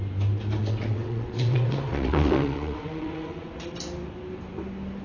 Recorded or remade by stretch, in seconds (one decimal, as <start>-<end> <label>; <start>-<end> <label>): 0.0-0.6 recorded; 0.6-3.6 remade; 3.6-5.0 recorded